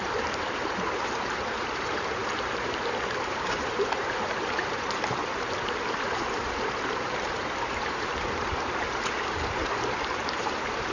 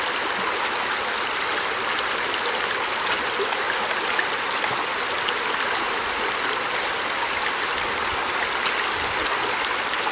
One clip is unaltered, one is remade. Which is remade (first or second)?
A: first